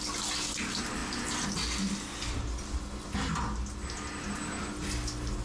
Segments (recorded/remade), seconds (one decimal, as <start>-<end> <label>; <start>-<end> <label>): 0.0-5.4 recorded